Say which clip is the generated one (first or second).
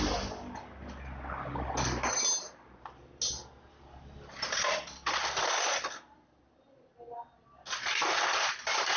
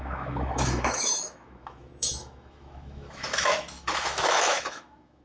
second